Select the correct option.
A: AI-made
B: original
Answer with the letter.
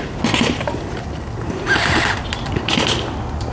B